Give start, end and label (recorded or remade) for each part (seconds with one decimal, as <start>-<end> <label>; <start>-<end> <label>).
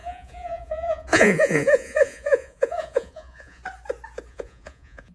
0.0-3.6 remade; 3.6-4.3 recorded; 4.3-5.1 remade